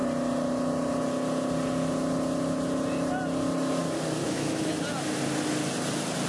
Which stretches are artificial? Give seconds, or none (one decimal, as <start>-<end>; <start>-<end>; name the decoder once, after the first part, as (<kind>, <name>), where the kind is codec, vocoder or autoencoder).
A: 4.2-4.7 (autoencoder, DAC-VAE)